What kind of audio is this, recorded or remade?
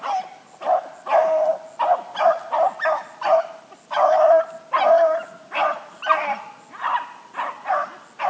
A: recorded